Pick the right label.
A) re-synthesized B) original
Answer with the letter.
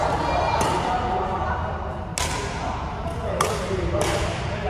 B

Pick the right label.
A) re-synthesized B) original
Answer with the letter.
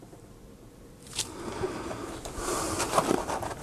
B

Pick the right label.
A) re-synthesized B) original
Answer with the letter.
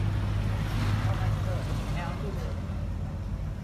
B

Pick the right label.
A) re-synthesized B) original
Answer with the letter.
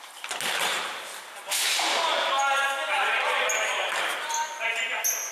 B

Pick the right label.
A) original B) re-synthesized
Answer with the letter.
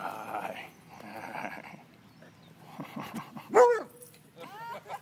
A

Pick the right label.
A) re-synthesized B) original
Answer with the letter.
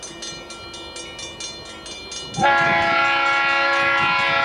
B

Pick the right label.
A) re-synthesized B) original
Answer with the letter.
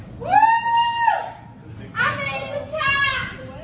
B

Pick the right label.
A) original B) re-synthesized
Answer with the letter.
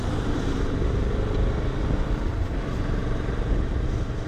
A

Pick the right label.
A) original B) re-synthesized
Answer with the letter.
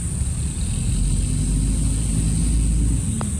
A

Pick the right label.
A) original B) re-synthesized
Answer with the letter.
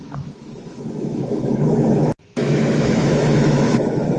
B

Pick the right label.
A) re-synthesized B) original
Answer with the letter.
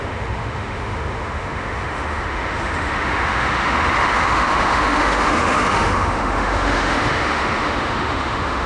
A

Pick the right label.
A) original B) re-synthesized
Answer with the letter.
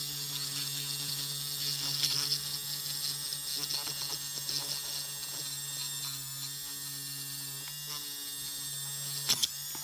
A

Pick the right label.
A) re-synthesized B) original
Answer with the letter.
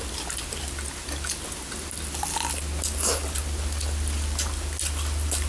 B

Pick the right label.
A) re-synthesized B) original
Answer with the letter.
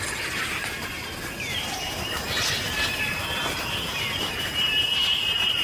B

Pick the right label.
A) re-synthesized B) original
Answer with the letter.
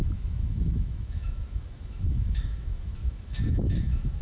A